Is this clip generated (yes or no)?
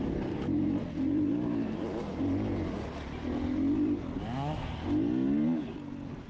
no